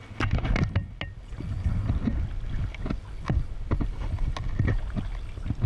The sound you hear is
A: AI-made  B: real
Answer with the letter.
B